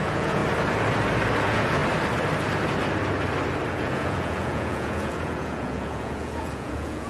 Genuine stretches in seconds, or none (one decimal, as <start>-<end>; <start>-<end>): 0.4-1.4; 1.8-3.7